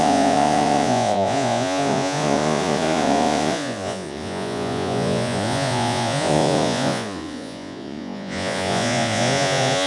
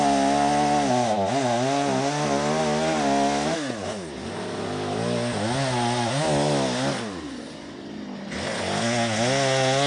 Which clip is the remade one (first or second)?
first